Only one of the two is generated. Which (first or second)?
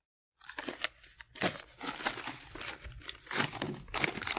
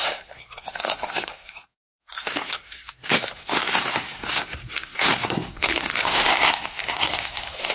second